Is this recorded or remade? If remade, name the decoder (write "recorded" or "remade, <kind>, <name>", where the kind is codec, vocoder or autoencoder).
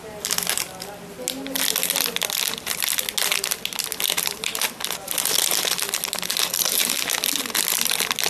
recorded